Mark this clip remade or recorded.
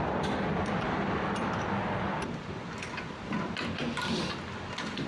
recorded